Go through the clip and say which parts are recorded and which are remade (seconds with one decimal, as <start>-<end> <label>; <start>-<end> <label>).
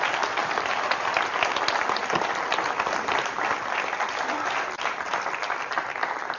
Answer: 0.0-6.4 recorded